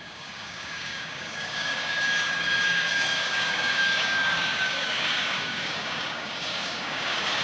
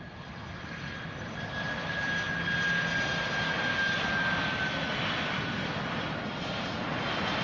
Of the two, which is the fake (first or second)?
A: first